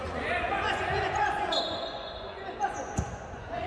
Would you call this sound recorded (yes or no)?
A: no